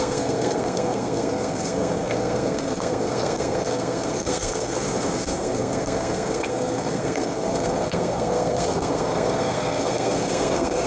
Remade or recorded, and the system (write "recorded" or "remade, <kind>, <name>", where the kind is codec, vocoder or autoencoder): remade, codec, SNAC